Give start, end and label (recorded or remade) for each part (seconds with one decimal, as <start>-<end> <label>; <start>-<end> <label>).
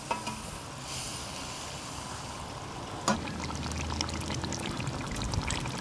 0.0-5.8 recorded